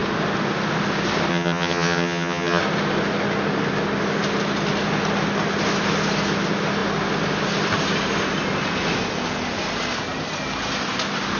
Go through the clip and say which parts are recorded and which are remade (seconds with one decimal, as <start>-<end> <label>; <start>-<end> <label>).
0.0-1.3 recorded; 1.3-2.6 remade; 2.6-11.4 recorded